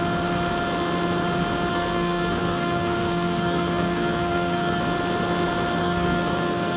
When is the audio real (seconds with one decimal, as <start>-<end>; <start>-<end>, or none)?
0.0-1.7; 4.8-5.8

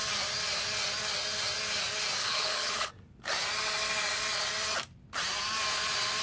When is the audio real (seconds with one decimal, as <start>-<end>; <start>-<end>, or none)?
0.0-2.2; 2.9-6.2

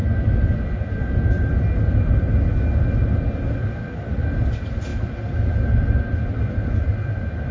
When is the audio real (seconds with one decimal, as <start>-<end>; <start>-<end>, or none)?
0.0-7.5

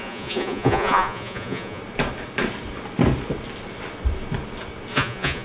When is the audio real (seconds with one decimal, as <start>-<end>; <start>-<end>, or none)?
1.8-4.9

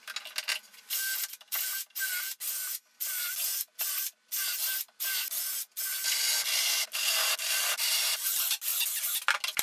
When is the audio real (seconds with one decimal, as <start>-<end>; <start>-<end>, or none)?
0.0-9.6